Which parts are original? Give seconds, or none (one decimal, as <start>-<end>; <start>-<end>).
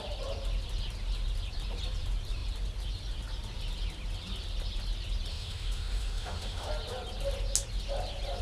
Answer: 0.0-5.3; 6.7-8.4